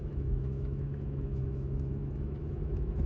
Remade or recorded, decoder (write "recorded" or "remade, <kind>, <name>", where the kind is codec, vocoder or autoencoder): remade, autoencoder, DAC-VAE